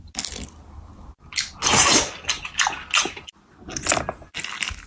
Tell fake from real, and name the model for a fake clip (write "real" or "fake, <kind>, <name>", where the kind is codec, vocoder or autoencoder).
real